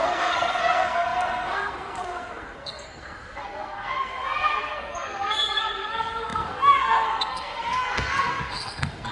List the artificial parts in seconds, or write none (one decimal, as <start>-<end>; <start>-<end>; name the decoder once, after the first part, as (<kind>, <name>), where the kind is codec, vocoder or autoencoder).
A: 0.0-9.1 (codec, SNAC)